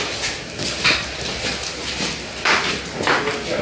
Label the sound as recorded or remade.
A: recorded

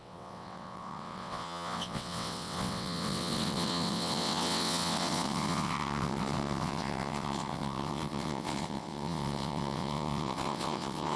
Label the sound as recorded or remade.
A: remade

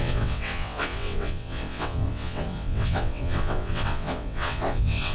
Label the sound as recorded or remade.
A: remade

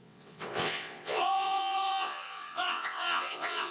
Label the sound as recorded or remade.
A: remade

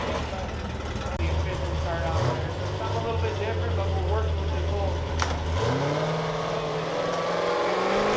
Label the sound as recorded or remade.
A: recorded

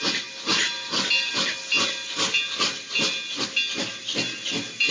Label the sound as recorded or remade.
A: recorded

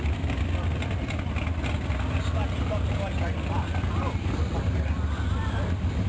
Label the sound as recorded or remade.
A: recorded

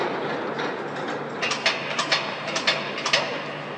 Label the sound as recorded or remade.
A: recorded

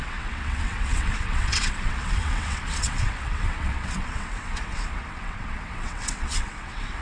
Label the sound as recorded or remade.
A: remade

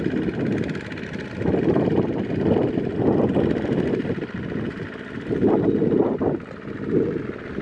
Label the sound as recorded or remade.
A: recorded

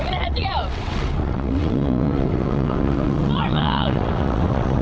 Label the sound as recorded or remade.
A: remade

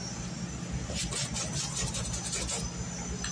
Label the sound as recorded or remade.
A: recorded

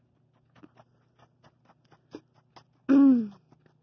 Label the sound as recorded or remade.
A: recorded